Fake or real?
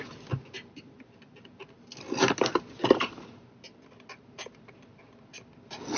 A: real